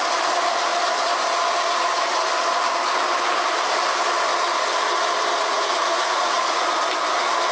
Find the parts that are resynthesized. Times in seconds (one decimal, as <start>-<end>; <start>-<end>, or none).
5.4-6.6